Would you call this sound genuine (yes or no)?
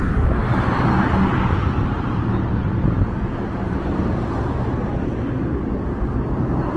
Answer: yes